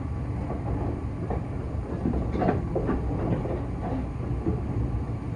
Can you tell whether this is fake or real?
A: real